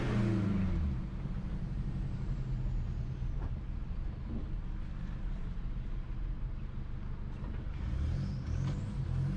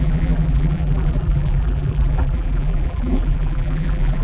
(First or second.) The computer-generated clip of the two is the second